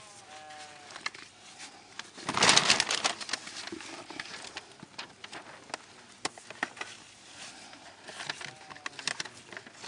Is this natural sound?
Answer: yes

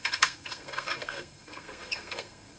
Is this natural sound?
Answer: no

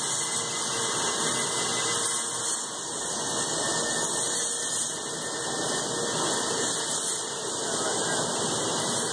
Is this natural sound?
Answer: yes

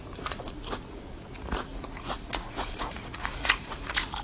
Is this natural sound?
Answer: no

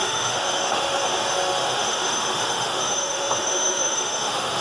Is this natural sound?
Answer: no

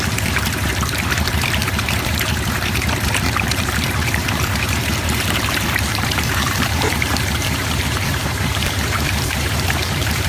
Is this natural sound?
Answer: no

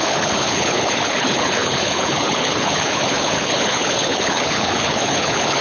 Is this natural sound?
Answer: no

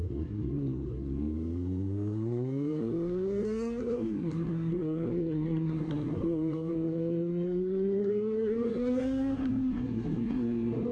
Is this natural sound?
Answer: no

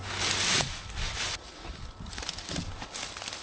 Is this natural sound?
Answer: yes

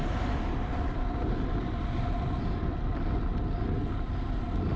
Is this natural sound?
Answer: yes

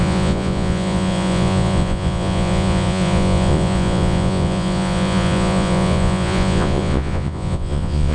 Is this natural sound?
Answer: no